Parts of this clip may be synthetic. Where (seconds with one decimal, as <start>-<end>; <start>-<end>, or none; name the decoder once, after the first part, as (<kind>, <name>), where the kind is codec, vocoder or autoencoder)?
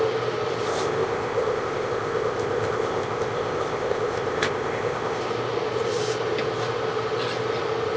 0.7-5.2 (codec, ZipCodec)